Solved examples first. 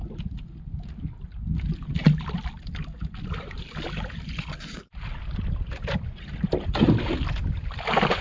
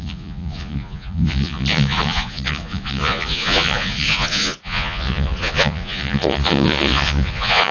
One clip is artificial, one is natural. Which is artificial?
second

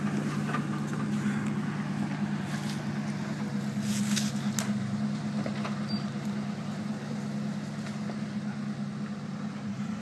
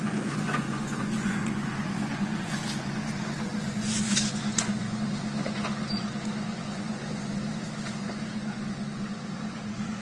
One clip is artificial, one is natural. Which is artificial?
second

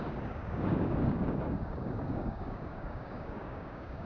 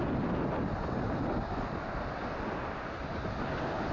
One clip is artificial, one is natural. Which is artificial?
first